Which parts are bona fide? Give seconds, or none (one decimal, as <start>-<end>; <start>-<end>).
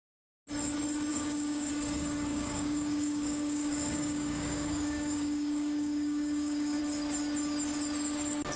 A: 0.0-1.1; 1.7-2.3; 6.8-8.6